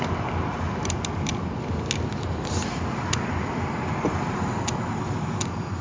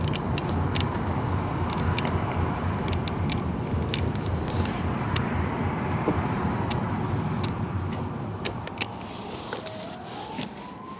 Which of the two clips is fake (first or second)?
second